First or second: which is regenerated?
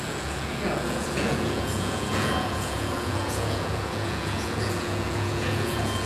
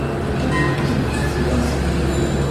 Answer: first